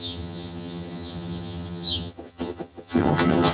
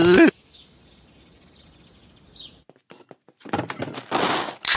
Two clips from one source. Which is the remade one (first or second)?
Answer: first